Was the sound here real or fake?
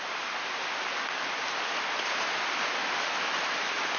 real